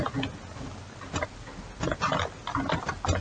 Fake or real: real